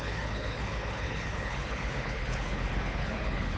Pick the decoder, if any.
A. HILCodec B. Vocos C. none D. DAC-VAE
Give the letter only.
A